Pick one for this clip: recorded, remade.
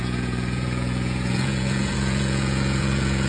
remade